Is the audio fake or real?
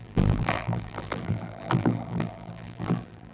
fake